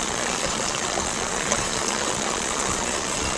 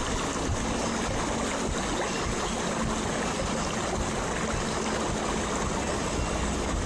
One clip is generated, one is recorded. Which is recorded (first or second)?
second